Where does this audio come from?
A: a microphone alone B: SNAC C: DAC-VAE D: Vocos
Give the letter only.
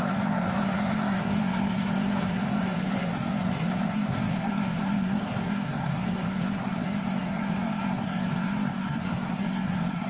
B